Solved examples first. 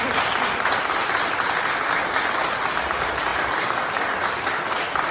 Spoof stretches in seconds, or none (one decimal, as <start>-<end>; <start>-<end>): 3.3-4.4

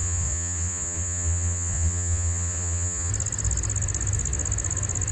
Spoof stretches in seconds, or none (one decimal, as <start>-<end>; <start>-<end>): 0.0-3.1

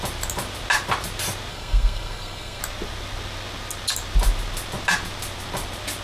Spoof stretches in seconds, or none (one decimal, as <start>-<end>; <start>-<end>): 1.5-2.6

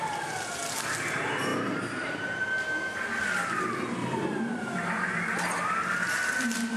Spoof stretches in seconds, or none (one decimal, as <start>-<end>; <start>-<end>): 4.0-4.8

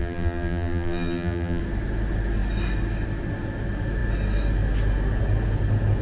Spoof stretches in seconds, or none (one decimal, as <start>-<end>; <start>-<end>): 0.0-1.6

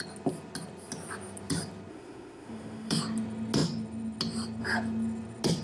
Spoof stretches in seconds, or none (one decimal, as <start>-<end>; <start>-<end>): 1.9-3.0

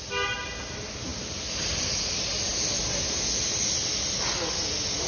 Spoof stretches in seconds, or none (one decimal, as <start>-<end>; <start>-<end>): none

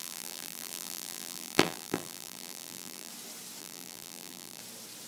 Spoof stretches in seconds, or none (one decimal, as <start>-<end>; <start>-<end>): 0.0-3.1; 3.6-4.6